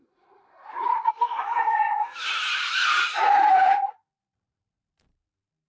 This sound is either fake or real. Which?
fake